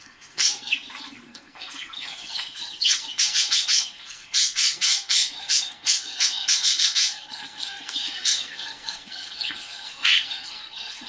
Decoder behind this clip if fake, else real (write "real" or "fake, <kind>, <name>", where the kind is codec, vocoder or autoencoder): fake, codec, SNAC